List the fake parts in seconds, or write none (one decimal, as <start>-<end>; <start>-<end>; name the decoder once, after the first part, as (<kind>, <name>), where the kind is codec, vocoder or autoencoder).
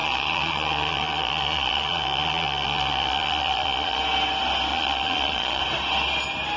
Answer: 0.0-4.0 (vocoder, Vocos); 4.7-5.6